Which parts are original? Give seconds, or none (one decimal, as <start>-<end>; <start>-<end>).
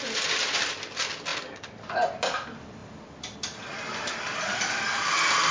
0.0-5.5